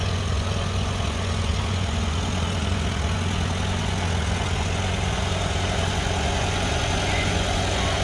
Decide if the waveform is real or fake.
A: fake